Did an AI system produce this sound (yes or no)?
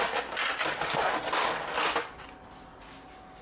no